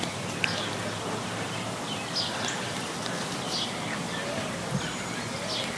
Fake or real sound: real